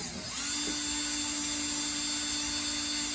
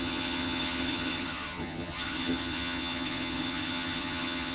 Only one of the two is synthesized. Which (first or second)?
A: second